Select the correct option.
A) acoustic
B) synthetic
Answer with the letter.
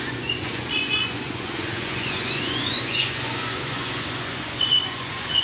B